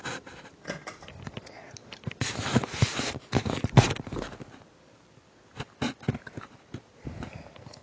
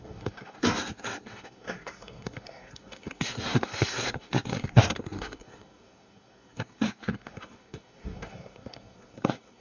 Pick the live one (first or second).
first